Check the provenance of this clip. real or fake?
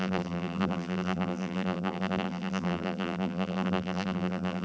fake